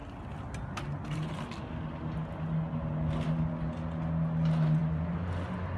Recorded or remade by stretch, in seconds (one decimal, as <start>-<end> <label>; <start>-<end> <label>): 0.0-5.8 recorded